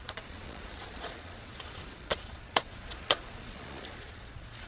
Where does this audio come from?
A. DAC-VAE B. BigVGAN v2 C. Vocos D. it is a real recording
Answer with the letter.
C